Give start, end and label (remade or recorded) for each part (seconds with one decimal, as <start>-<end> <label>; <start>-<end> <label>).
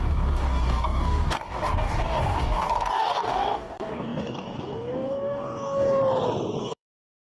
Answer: 0.0-6.0 remade; 6.0-6.6 recorded; 6.6-7.3 remade